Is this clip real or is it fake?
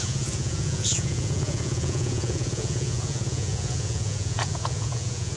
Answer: fake